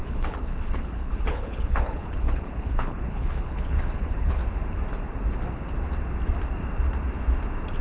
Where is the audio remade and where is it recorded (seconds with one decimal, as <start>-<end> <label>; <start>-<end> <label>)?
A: 0.0-4.4 remade; 4.4-7.8 recorded